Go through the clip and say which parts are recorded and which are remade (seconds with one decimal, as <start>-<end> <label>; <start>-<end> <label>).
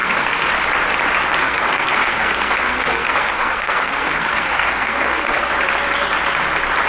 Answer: 0.0-0.5 remade; 0.5-1.4 recorded; 1.4-5.5 remade; 5.5-6.9 recorded